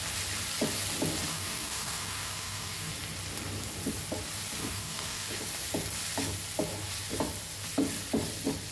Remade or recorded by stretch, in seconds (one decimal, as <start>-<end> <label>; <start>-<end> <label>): 0.0-1.3 recorded; 1.3-2.9 remade; 2.9-4.6 recorded; 4.6-5.3 remade; 5.3-8.7 recorded